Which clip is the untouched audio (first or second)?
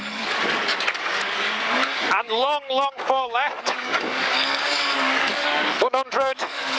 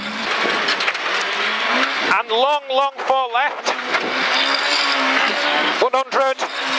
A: second